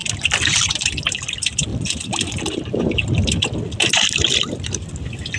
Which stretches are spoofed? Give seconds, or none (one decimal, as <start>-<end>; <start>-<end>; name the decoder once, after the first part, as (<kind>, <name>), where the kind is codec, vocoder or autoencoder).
0.0-1.0 (vocoder, BigVGAN v2); 1.7-4.9